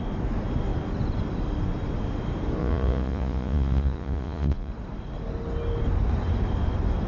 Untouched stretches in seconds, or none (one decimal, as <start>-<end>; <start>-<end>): 0.0-2.6; 4.7-7.1